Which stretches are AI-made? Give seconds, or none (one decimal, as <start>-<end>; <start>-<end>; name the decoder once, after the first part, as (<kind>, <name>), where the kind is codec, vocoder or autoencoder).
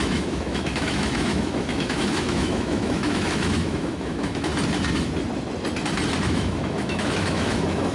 0.0-4.5 (autoencoder, DAC-VAE); 6.2-7.9